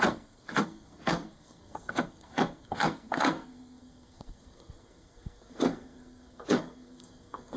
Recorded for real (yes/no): no